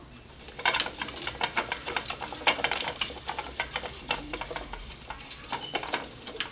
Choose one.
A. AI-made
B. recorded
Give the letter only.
B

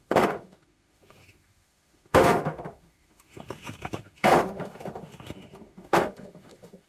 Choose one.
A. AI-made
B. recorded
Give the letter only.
A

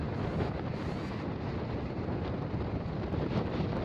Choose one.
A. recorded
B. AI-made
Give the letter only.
A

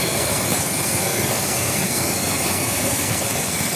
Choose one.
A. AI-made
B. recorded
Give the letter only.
A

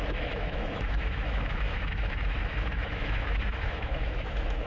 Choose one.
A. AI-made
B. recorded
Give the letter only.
A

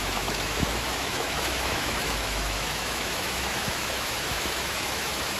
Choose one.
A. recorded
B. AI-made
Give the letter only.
B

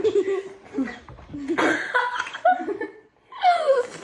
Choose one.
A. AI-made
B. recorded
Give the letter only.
B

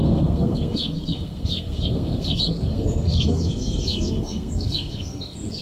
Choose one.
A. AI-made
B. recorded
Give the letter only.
A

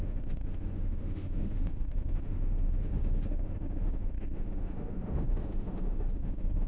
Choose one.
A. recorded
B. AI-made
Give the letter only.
B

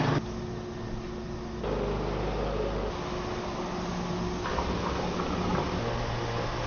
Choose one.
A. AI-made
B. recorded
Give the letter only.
B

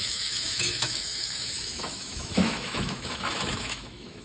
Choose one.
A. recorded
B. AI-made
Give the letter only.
B